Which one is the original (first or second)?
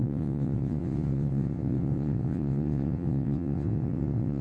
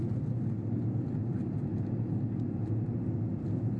second